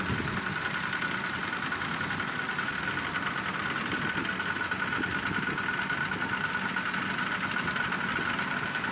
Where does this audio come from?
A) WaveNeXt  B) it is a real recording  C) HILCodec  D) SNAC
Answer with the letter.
B